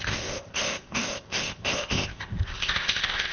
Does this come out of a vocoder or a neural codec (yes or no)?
yes